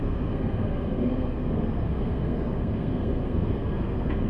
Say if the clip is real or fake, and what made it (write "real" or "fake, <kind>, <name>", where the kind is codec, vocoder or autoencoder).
fake, codec, SNAC